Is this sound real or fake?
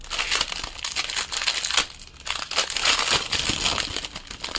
real